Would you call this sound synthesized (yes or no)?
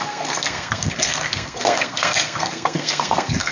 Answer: yes